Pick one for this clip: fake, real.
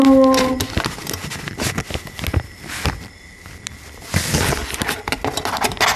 real